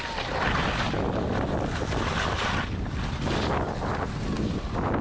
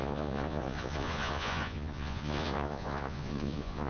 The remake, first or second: second